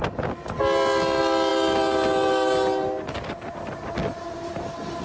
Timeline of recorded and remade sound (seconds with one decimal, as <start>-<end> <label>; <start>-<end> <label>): 0.0-5.0 recorded